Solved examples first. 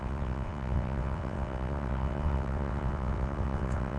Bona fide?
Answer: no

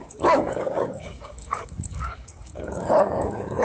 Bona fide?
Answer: no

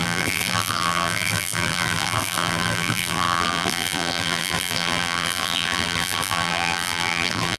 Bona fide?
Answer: no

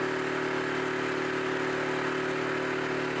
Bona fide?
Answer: yes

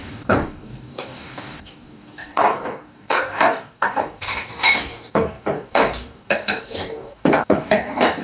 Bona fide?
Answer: no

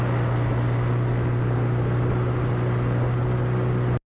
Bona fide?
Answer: yes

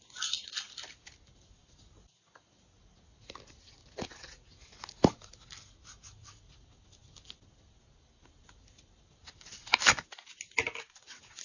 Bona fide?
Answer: yes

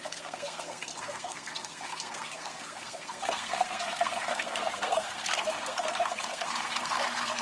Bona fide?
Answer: no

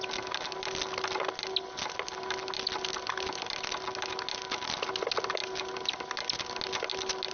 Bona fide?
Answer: yes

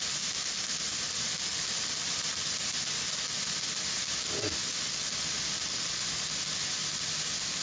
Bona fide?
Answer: yes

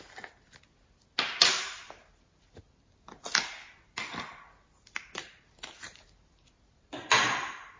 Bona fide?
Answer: yes